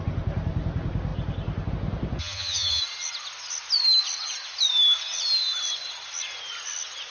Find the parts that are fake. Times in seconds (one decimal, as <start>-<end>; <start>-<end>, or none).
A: 2.2-2.8